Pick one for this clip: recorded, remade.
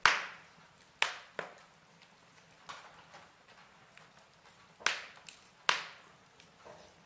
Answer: recorded